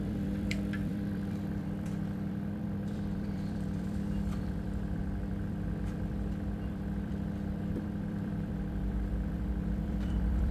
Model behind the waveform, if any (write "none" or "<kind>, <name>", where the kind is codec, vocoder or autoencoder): vocoder, BigVGAN v2